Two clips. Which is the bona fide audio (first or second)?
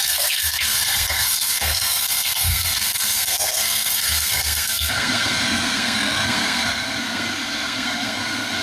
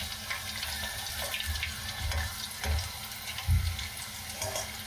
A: second